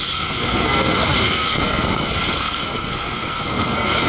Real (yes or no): no